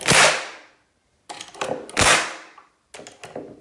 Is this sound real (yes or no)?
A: yes